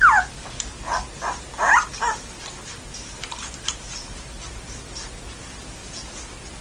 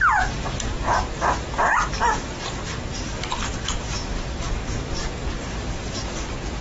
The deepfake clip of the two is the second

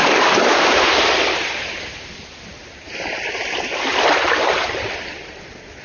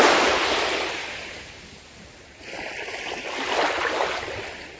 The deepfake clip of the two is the first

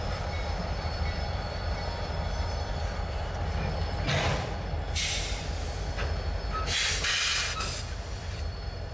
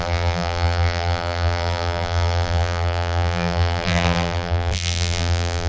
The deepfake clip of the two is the second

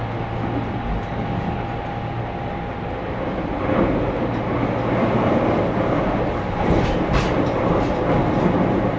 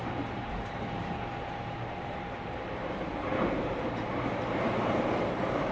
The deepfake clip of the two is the second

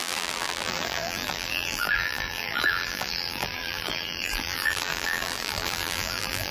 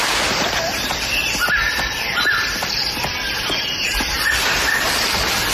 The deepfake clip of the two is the first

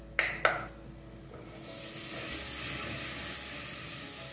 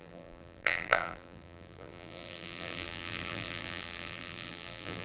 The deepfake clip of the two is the second